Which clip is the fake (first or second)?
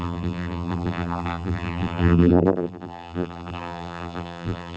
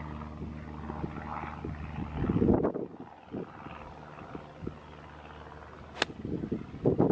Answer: first